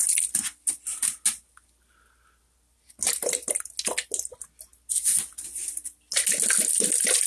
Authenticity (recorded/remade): recorded